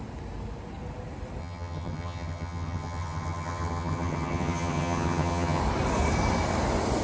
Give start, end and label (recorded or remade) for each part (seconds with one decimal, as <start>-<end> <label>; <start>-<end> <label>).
0.0-1.4 recorded; 1.4-5.6 remade; 5.6-7.0 recorded